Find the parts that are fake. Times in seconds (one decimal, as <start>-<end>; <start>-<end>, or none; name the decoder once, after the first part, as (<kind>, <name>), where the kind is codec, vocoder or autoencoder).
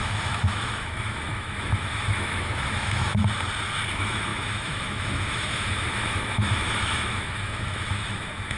0.0-3.2 (autoencoder, DAC-VAE); 3.9-8.6